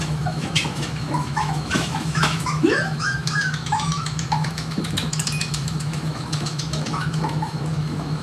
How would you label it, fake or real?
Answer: fake